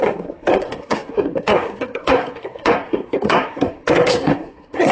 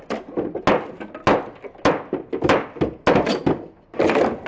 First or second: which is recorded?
second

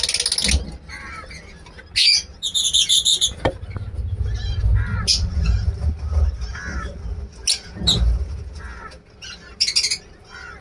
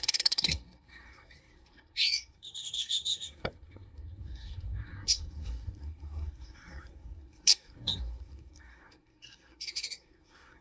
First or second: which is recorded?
first